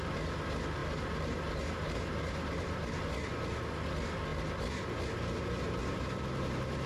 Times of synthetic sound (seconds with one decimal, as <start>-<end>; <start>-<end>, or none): 0.8-3.1; 5.8-6.9